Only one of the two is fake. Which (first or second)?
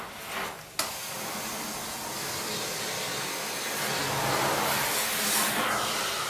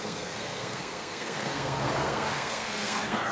second